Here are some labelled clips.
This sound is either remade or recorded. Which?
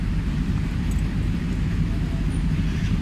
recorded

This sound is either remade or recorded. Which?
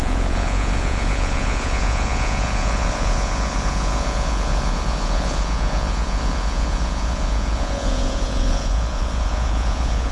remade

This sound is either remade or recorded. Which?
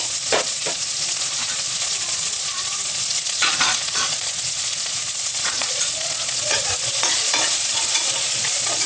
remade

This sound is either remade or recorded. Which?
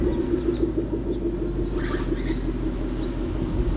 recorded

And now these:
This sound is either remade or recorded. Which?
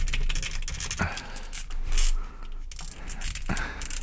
recorded